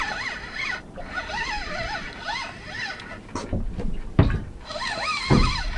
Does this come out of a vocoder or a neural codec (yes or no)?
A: yes